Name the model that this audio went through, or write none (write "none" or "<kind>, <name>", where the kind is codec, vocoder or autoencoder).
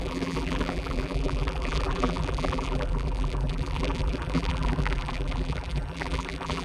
vocoder, BigVGAN v2